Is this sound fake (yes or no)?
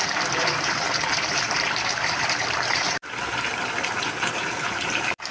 yes